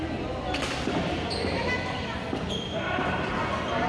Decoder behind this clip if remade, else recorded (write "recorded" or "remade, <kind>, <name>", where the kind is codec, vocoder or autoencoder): recorded